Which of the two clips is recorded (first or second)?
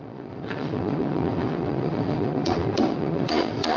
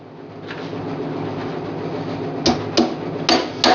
second